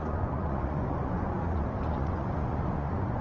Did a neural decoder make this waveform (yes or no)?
yes